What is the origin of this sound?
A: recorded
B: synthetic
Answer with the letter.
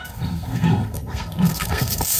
B